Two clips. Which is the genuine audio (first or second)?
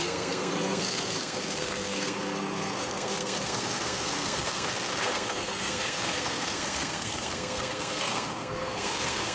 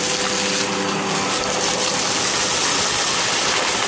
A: second